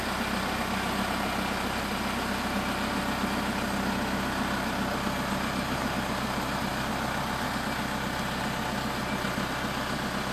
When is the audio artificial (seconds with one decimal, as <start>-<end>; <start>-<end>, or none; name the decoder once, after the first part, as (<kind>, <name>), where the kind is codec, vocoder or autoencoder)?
none